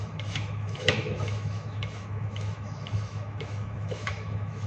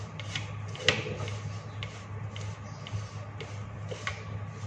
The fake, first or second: first